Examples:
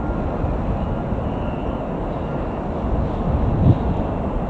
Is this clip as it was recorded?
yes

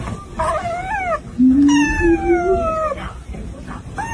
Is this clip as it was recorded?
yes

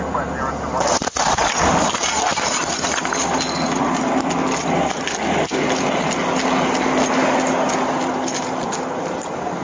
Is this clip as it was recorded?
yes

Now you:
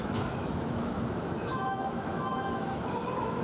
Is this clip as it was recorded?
no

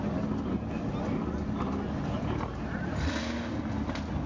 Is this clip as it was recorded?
yes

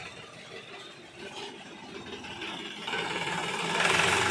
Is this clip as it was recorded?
yes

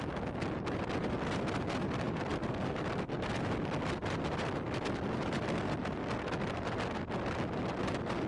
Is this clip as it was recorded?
yes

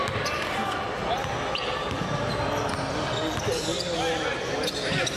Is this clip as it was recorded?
yes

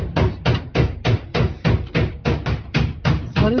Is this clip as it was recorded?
yes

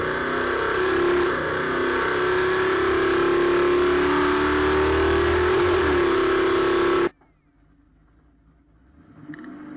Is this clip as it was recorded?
yes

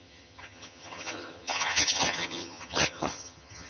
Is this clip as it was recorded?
no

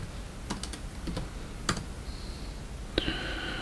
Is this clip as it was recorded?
yes